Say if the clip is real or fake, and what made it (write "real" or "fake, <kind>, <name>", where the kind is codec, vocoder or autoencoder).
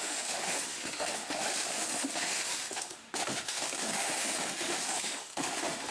fake, autoencoder, DAC-VAE